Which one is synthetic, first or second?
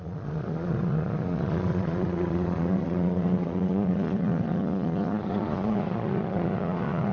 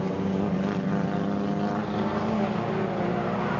first